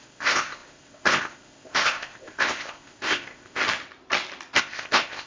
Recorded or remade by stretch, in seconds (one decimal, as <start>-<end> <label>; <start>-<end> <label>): 0.0-3.6 remade; 3.6-4.6 recorded; 4.6-5.3 remade